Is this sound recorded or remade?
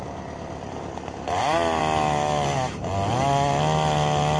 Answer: recorded